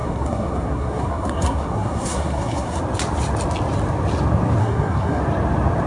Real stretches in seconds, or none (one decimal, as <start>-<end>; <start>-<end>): 2.8-4.6; 5.2-5.9